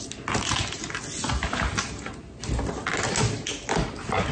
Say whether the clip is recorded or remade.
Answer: recorded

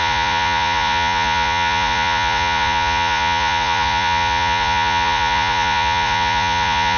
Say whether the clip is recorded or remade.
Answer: remade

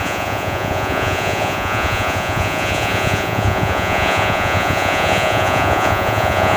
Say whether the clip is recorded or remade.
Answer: remade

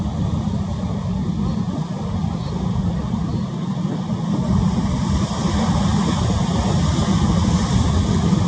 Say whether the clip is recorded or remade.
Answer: recorded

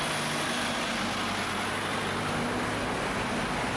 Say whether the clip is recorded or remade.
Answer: recorded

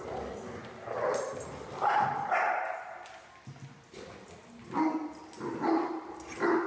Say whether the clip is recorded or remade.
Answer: recorded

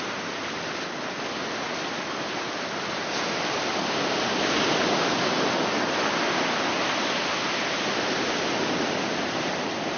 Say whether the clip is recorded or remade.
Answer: recorded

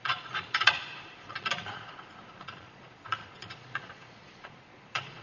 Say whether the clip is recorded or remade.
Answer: remade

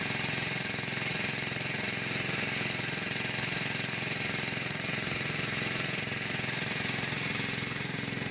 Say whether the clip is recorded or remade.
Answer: remade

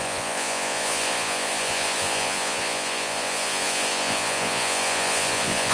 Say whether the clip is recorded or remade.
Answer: remade